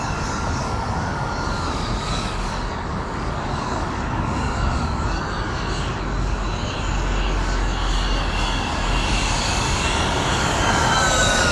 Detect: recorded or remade remade